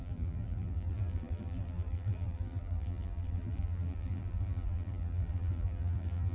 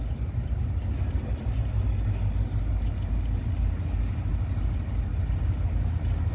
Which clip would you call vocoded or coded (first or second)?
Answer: first